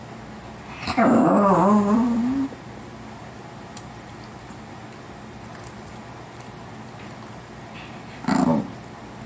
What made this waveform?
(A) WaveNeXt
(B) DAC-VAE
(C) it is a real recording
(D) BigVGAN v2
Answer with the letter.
C